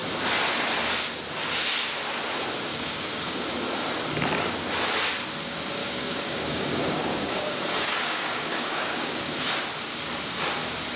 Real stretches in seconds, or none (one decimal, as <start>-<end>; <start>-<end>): 0.0-2.7; 3.4-5.8; 9.2-11.0